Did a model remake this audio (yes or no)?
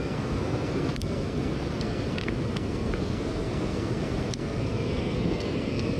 yes